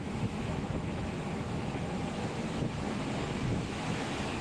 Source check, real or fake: fake